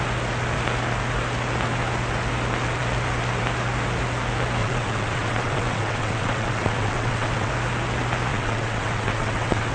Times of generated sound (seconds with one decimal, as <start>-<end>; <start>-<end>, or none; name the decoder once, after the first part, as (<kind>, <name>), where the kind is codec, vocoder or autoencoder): 4.6-7.5 (vocoder, WaveNeXt); 8.3-9.7